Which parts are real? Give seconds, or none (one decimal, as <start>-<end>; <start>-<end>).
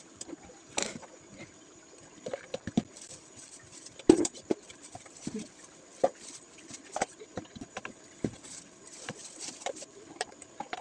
none